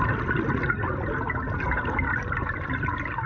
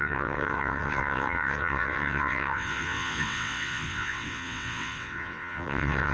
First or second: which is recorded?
first